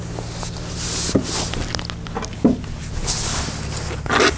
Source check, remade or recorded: recorded